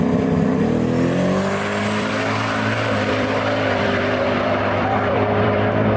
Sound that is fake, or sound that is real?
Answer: fake